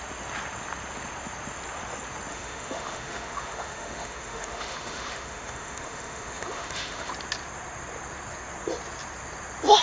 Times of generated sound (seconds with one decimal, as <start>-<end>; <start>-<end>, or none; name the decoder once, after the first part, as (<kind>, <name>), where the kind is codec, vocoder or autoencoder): 2.3-7.1 (autoencoder, DAC-VAE)